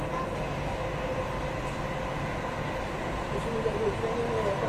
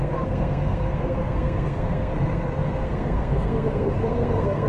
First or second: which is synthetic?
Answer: second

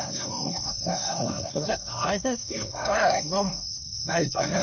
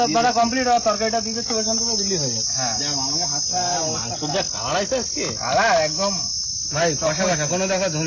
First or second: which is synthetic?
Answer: first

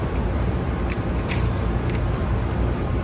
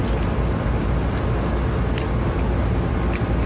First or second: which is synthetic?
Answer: first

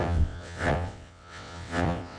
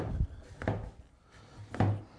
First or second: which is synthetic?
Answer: first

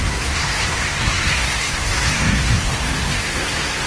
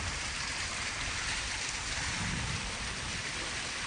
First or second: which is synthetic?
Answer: first